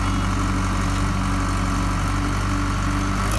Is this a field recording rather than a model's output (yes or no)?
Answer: yes